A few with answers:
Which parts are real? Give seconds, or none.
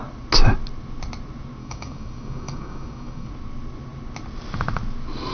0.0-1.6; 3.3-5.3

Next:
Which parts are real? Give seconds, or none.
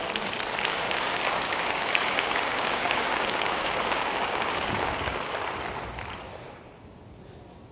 0.0-0.7; 5.3-7.7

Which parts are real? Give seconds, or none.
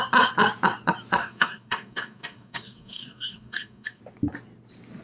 0.0-1.2; 4.0-5.0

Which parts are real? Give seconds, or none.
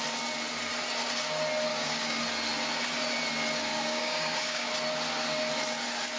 0.0-1.7; 2.2-3.7; 4.7-6.2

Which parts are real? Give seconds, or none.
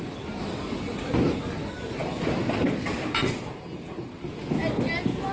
0.0-5.3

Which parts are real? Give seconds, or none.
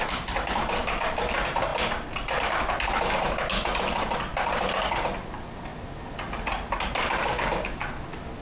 0.0-7.3; 7.8-8.4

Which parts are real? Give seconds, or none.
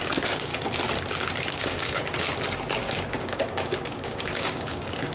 0.5-1.5; 2.0-2.8